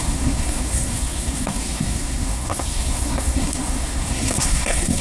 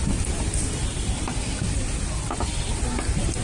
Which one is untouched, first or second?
second